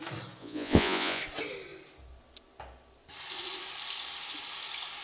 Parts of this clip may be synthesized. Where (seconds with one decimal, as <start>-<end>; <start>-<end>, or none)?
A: 0.4-1.2